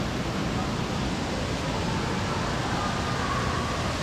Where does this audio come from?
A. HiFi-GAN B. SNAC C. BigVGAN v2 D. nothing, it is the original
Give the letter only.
D